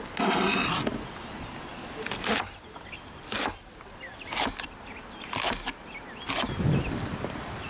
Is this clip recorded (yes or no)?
yes